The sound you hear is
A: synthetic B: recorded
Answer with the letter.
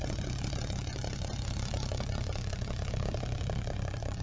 A